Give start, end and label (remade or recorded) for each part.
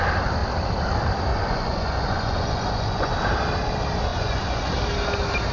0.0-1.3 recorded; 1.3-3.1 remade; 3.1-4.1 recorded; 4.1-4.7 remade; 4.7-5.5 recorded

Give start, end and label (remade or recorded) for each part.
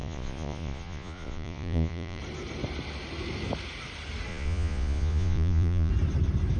0.0-2.2 remade; 2.2-4.3 recorded; 4.3-5.9 remade; 5.9-6.6 recorded